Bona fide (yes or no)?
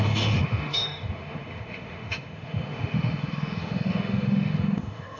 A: no